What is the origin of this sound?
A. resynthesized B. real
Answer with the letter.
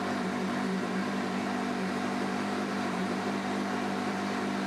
A